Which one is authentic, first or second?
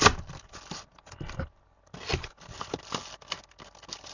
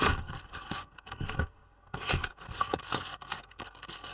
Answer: first